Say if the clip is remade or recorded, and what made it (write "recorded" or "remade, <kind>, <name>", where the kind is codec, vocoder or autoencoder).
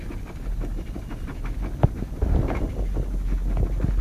recorded